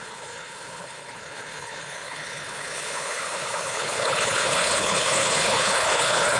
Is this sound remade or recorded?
remade